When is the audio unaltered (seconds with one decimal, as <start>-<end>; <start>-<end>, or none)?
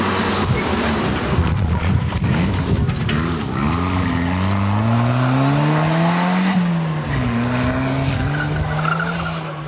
0.0-1.4; 1.9-9.7